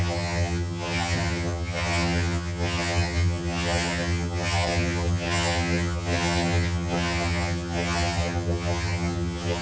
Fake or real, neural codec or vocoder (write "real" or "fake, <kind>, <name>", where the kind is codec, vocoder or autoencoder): fake, vocoder, HiFi-GAN